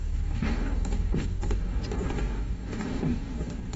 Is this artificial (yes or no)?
yes